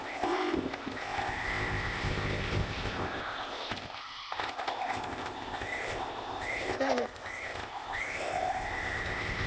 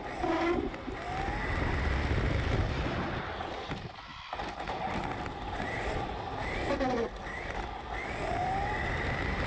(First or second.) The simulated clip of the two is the first